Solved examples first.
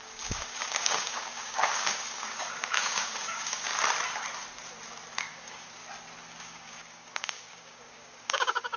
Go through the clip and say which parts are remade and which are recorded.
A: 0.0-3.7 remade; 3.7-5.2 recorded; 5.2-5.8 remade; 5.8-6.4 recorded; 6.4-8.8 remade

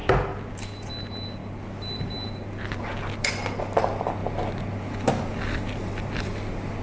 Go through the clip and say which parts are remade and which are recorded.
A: 0.0-6.8 recorded

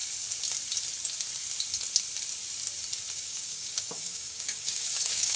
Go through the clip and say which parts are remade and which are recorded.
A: 0.0-3.1 recorded; 3.1-5.4 remade

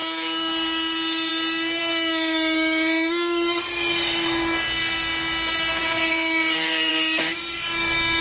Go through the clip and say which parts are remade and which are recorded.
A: 0.0-8.2 remade

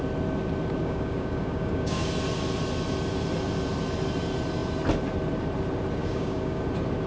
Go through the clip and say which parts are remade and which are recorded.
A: 0.0-0.8 recorded; 0.8-2.1 remade; 2.1-6.0 recorded; 6.0-6.6 remade; 6.6-7.1 recorded

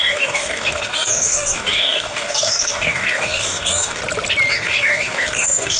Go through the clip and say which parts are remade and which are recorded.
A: 0.0-4.0 remade; 4.0-4.5 recorded; 4.5-5.8 remade